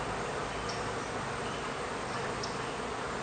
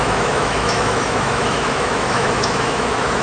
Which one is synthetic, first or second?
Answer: second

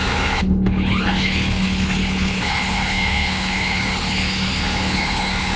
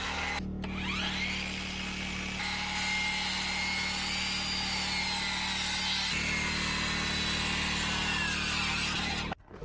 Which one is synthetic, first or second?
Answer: first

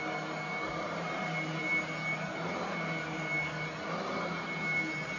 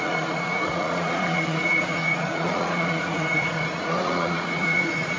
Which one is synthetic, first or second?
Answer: second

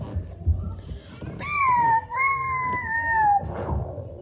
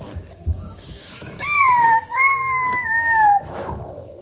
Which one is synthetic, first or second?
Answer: second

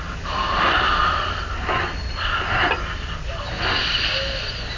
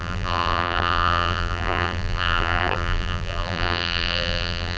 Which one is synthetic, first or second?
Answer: second